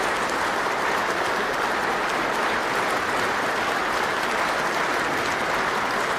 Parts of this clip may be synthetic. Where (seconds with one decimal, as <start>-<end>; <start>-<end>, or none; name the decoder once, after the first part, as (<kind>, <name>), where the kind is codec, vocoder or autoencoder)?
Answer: none